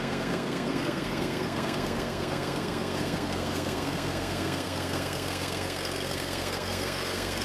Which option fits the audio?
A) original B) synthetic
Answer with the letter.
B